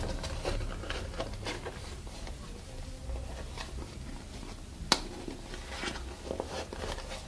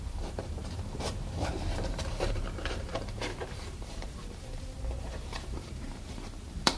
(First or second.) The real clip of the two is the first